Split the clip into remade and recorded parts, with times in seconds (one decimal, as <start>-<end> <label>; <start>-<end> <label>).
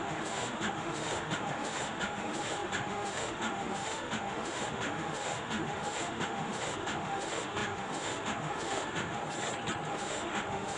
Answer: 0.0-9.2 remade; 9.2-9.9 recorded; 9.9-10.8 remade